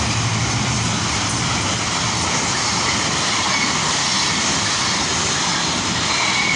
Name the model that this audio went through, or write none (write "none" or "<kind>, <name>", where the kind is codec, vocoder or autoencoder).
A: none